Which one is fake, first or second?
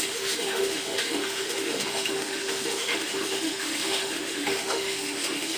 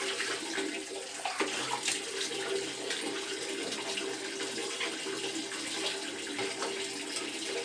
first